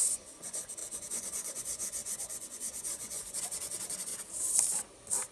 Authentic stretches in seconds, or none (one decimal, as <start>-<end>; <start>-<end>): 4.1-5.3